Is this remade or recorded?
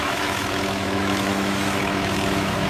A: remade